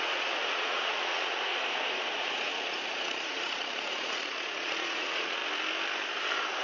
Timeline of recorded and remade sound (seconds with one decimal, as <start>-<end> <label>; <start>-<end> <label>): 0.0-1.5 remade; 1.5-2.1 recorded; 2.1-5.4 remade; 5.4-6.6 recorded